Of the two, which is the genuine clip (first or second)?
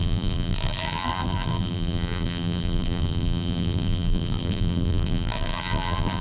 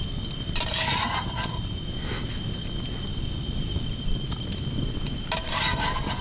second